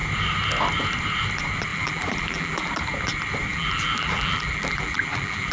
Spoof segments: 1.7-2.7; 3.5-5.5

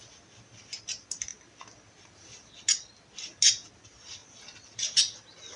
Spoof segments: none

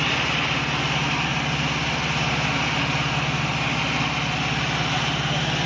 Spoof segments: none

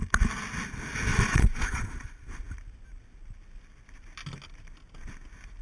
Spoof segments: 1.1-2.4

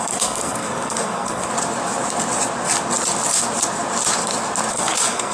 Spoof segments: 0.0-1.5; 4.7-5.3